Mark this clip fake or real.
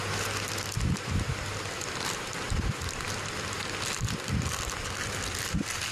real